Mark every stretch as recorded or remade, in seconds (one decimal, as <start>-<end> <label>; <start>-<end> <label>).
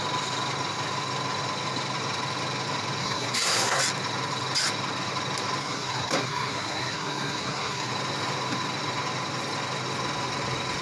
0.0-3.0 recorded; 3.0-3.8 remade; 3.8-5.6 recorded; 5.6-7.9 remade; 7.9-10.8 recorded